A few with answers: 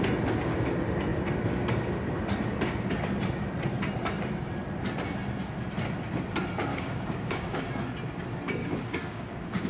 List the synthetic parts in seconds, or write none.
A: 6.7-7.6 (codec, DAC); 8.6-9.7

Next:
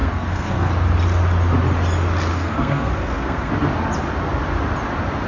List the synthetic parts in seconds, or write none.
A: 0.0-0.7 (codec, SNAC); 2.3-3.5

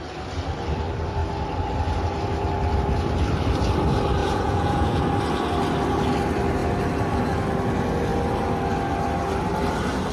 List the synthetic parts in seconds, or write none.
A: 4.2-5.0 (vocoder, Vocos)

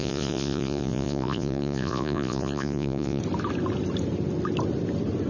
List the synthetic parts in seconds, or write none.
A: 0.0-3.2 (vocoder, Vocos)

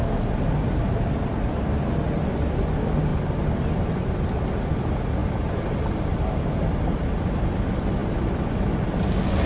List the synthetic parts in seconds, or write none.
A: none

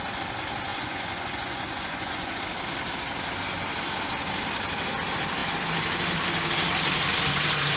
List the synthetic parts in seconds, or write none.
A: 0.7-2.4 (vocoder, Vocos)

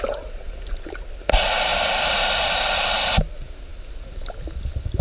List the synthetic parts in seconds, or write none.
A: none

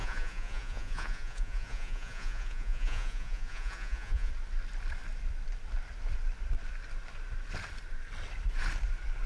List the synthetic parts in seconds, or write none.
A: 0.0-4.3 (vocoder, Vocos)